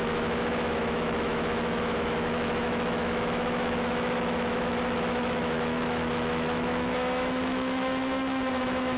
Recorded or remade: remade